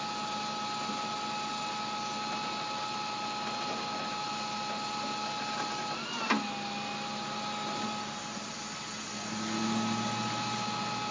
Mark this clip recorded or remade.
recorded